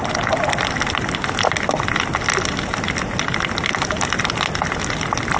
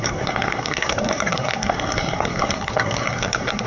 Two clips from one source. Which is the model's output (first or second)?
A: second